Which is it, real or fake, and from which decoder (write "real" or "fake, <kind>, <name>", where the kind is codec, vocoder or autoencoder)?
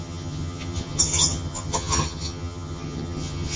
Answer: fake, vocoder, HiFi-GAN